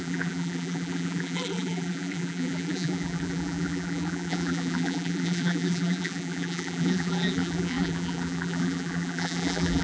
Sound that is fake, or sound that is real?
fake